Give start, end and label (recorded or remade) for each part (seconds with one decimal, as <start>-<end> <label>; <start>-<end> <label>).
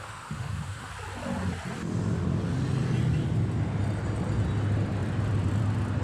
0.0-0.9 remade; 0.9-6.0 recorded